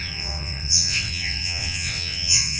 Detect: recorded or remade remade